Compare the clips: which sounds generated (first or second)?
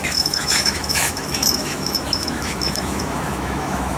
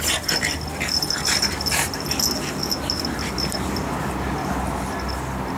first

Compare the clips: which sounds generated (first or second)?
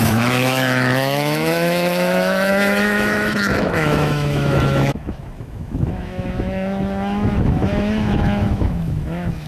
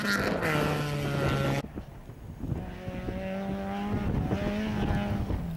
first